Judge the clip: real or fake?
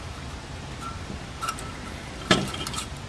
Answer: fake